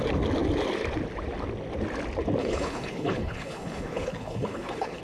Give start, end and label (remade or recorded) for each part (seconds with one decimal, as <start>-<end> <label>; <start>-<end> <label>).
0.0-2.4 recorded; 2.4-5.0 remade